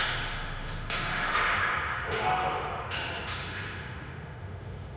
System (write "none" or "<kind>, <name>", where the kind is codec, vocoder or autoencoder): autoencoder, DAC-VAE